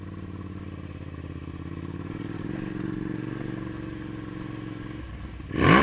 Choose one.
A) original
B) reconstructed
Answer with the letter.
A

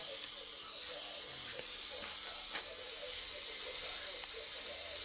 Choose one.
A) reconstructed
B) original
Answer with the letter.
B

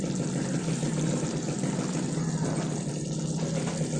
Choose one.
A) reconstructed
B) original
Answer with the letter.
B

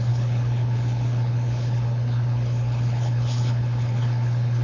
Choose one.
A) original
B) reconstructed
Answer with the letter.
B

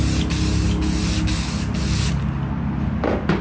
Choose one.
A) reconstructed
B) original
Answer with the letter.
B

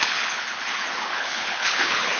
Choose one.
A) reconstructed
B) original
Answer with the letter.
A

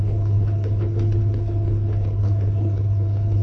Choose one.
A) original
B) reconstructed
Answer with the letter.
B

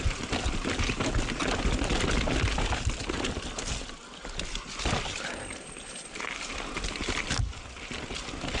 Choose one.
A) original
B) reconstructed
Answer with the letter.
A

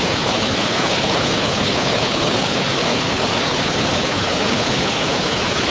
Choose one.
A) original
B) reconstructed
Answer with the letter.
B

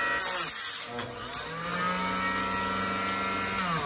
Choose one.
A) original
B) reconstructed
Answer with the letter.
A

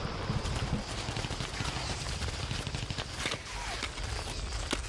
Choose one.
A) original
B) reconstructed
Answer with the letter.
A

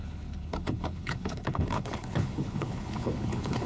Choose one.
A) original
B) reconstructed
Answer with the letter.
B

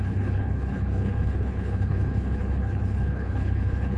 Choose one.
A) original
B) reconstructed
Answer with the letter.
B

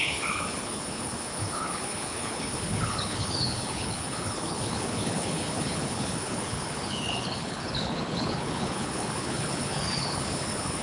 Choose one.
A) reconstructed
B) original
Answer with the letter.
A